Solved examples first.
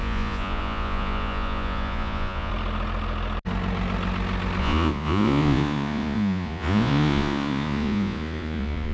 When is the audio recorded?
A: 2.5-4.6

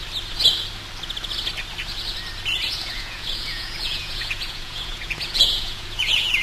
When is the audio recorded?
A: 0.0-2.7

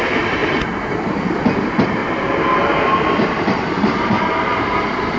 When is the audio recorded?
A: 0.0-2.0

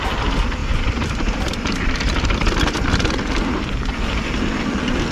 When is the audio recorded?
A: 0.0-0.6; 3.7-5.1

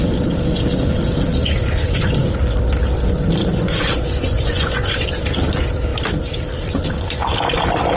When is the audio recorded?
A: 0.0-3.4; 5.1-8.0